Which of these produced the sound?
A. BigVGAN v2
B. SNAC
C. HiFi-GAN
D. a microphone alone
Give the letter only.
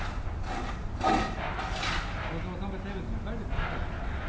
D